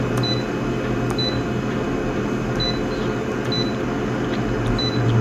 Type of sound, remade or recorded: recorded